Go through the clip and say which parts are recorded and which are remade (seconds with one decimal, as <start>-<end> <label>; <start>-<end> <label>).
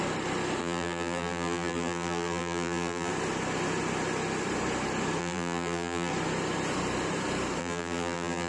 0.0-0.6 recorded; 0.6-3.1 remade; 3.1-5.2 recorded; 5.2-6.1 remade; 6.1-7.6 recorded; 7.6-8.5 remade